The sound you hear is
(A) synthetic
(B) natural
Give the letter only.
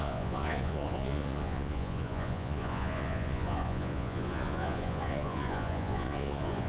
A